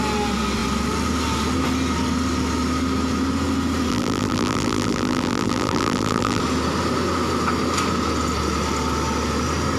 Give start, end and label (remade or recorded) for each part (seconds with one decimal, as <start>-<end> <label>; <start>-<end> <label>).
0.0-3.9 recorded; 3.9-6.4 remade; 6.4-9.8 recorded